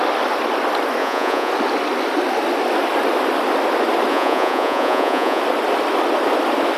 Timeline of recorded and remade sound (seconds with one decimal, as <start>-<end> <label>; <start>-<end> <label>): 0.0-1.0 recorded; 1.0-1.5 remade; 1.5-4.1 recorded; 4.1-5.4 remade; 5.4-6.8 recorded